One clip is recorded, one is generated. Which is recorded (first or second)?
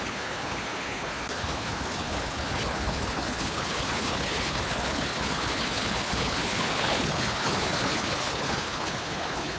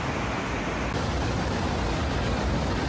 second